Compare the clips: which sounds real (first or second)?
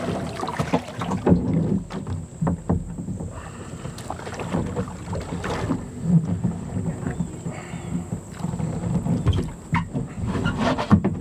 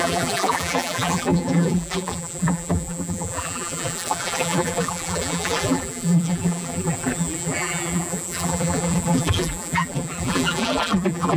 first